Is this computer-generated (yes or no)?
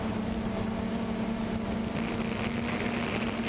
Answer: no